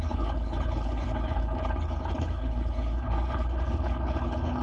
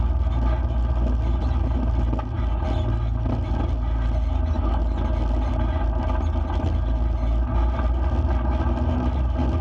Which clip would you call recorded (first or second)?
second